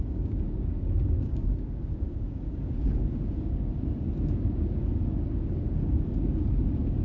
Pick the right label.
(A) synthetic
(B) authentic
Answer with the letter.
A